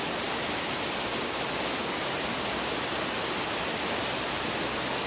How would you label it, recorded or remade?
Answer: recorded